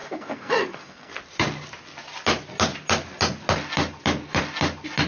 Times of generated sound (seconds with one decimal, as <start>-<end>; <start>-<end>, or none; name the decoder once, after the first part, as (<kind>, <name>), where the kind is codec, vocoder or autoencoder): 0.0-1.1 (codec, SNAC)